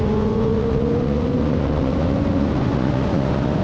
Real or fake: fake